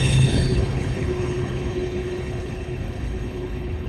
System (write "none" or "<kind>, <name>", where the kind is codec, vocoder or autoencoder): codec, HILCodec